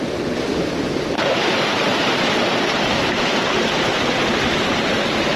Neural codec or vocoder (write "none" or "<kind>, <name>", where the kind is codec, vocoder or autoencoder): vocoder, BigVGAN v2